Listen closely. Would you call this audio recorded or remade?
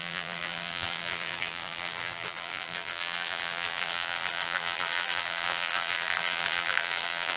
remade